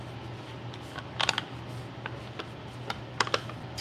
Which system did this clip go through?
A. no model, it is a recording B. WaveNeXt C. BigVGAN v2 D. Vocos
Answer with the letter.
A